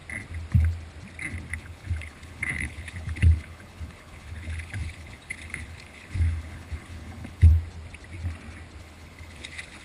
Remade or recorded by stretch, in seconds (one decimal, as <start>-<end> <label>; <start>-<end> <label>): 0.0-1.5 recorded; 1.5-7.5 remade; 7.5-8.8 recorded; 8.8-9.8 remade